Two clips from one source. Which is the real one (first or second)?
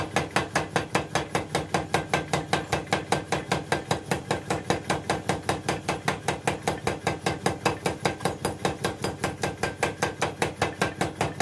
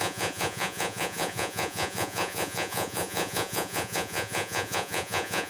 first